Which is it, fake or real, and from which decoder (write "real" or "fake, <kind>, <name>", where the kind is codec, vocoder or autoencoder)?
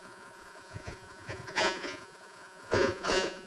fake, vocoder, Vocos